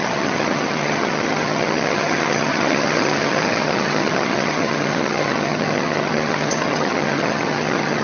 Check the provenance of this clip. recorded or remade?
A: remade